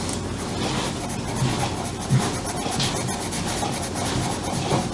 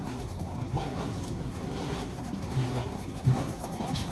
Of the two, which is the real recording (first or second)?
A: first